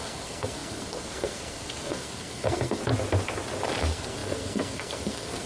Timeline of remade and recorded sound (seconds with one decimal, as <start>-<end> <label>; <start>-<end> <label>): 0.0-2.8 remade; 2.8-3.8 recorded; 3.8-5.5 remade